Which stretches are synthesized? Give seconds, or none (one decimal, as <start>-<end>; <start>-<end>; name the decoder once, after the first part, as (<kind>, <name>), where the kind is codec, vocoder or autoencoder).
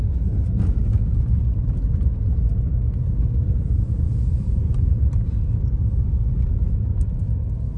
1.4-2.6 (vocoder, BigVGAN v2); 3.4-6.0